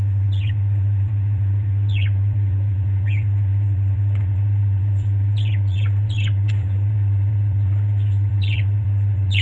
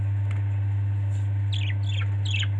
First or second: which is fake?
first